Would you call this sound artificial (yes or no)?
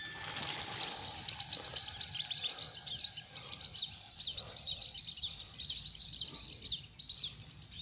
no